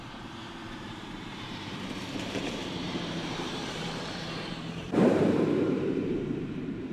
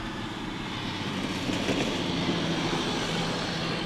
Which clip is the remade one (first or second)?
first